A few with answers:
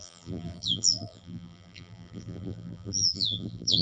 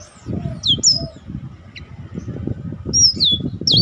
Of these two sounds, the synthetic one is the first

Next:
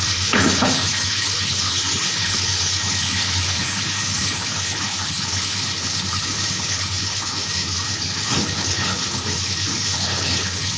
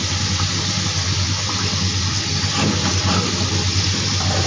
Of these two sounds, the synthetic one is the first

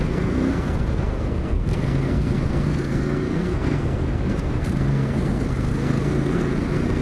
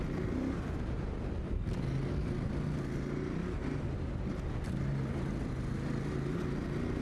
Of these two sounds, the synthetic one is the first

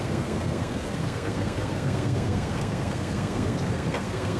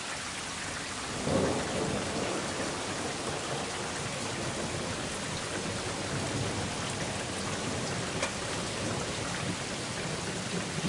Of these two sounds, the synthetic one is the first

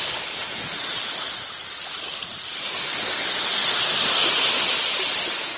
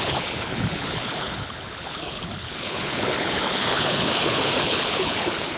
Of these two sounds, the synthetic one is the second